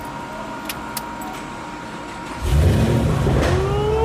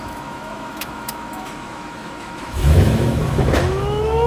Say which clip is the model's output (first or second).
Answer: second